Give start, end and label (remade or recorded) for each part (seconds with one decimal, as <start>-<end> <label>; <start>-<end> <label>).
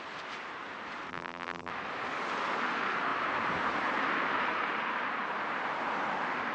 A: 0.0-1.1 recorded; 1.1-1.7 remade; 1.7-6.5 recorded